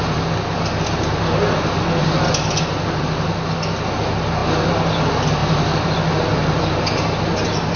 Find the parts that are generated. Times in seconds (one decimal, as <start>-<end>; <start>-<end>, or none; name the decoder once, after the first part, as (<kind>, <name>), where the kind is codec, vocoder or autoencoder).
none